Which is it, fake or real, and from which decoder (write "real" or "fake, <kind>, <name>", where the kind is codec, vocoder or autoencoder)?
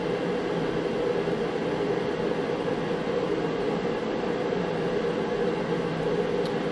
real